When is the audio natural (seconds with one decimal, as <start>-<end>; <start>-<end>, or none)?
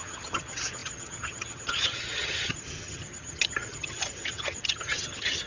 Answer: none